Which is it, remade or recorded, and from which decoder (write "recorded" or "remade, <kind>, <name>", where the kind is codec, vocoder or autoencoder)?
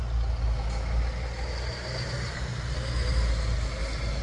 recorded